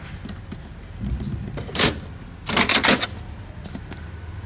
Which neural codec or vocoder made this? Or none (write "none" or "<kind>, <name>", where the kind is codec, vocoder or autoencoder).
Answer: none